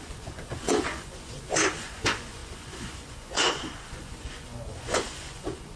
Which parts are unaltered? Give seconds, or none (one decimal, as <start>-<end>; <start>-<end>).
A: none